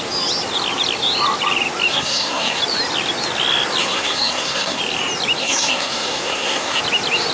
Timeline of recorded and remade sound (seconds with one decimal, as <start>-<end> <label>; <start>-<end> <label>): 0.0-1.9 recorded; 1.9-2.6 remade; 2.6-3.8 recorded; 3.8-4.8 remade; 4.8-5.4 recorded; 5.4-6.8 remade; 6.8-7.3 recorded